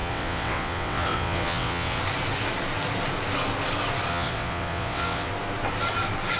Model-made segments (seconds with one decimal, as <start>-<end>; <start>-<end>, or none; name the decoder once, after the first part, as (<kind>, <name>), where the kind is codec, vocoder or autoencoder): 0.0-2.0 (vocoder, WaveNeXt); 4.1-5.3